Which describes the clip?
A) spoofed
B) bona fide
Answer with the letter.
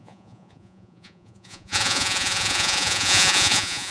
A